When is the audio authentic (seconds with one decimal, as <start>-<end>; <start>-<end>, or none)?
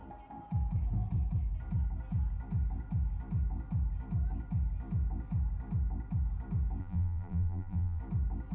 0.0-6.8; 8.0-8.5